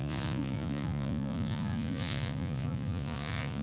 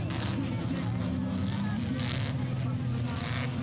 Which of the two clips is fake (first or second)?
first